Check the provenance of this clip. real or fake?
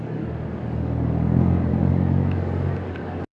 fake